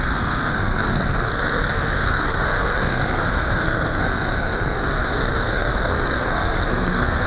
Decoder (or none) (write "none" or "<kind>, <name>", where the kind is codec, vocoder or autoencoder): codec, SNAC